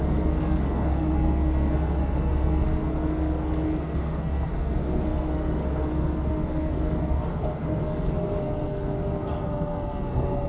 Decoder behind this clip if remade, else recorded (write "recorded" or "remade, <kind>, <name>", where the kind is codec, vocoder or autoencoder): remade, codec, SNAC